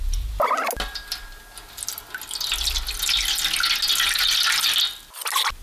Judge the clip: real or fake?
real